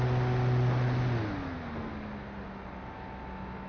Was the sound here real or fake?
real